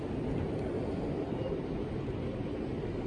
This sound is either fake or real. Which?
fake